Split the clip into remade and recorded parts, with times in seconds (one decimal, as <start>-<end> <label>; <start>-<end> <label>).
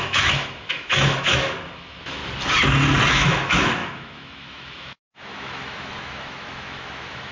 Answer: 0.0-2.2 remade; 2.2-3.1 recorded; 3.1-7.3 remade